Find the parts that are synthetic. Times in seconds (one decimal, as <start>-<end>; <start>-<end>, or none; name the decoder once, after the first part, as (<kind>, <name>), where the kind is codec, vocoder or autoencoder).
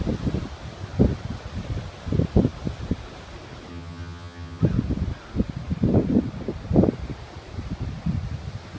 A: 3.7-4.6 (vocoder, HiFi-GAN)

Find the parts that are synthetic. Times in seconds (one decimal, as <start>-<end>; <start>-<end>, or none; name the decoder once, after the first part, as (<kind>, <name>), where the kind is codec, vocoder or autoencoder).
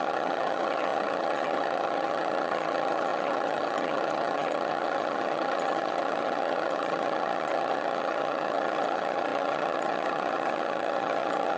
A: 0.0-11.6 (vocoder, HiFi-GAN)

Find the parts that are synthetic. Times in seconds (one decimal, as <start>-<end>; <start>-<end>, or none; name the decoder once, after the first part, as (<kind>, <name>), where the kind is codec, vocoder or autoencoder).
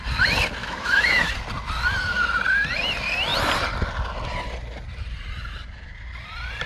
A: 0.6-1.3 (autoencoder, DAC-VAE)